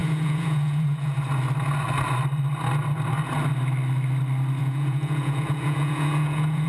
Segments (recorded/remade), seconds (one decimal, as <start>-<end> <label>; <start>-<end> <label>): 0.0-1.2 remade; 1.2-4.6 recorded; 4.6-6.7 remade